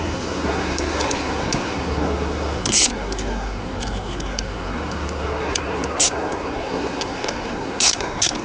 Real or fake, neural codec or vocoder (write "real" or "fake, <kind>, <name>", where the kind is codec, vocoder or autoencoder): fake, codec, SNAC